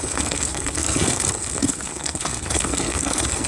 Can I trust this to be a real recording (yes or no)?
no